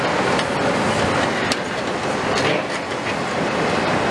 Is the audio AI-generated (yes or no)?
no